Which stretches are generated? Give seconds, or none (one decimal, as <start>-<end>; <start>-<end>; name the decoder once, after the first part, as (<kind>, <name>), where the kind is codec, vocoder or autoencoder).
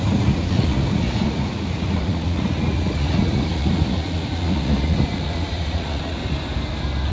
0.0-6.2 (vocoder, Vocos)